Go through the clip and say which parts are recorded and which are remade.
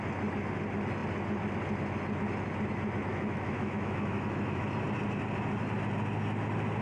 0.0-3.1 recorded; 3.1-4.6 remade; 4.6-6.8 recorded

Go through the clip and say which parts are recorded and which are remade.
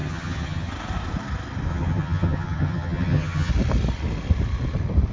0.0-0.7 remade; 0.7-1.7 recorded; 1.7-3.5 remade; 3.5-5.1 recorded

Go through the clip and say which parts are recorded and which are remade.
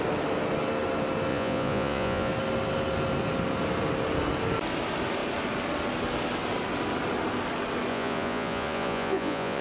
0.0-1.3 recorded; 1.3-2.3 remade; 2.3-7.9 recorded; 7.9-9.6 remade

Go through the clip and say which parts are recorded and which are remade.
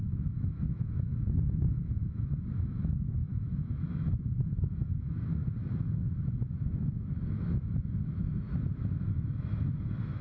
0.0-5.4 remade; 5.4-6.0 recorded; 6.0-10.2 remade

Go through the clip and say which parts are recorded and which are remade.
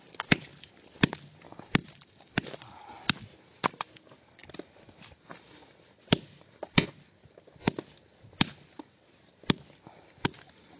0.0-1.8 recorded; 1.8-2.9 remade; 2.9-4.4 recorded; 4.4-4.9 remade; 4.9-10.8 recorded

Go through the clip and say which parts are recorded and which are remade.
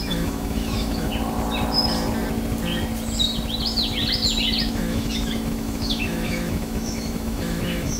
0.0-1.1 remade; 1.1-4.7 recorded; 4.7-8.0 remade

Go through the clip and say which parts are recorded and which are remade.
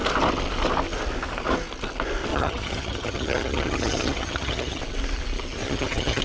0.0-2.3 recorded; 2.3-4.8 remade; 4.8-5.6 recorded; 5.6-6.2 remade